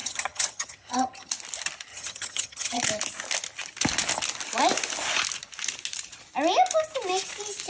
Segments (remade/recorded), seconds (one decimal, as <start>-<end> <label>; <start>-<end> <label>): 0.0-1.3 remade; 1.3-1.9 recorded; 1.9-2.8 remade; 2.8-7.7 recorded

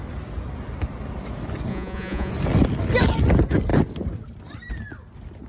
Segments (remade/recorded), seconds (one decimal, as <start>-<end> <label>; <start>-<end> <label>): 0.0-1.7 recorded; 1.7-2.3 remade; 2.3-5.5 recorded

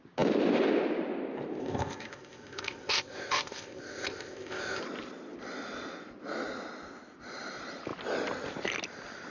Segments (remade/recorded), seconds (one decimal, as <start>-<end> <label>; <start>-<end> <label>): 0.0-1.6 recorded; 1.6-4.8 remade; 4.8-9.3 recorded